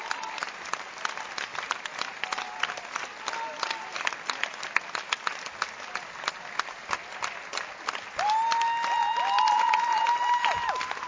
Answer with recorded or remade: recorded